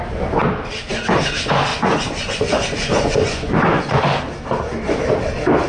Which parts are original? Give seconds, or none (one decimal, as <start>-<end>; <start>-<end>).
0.0-1.7; 4.0-5.7